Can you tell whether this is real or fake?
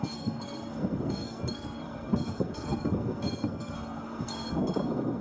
fake